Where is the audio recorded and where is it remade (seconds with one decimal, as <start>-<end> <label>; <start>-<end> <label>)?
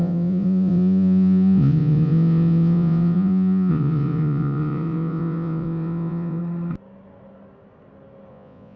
0.0-6.4 remade; 6.4-8.3 recorded; 8.3-8.8 remade